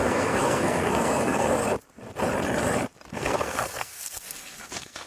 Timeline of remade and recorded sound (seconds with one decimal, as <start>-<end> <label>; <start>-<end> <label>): 0.0-1.6 remade; 1.6-3.1 recorded; 3.1-5.1 remade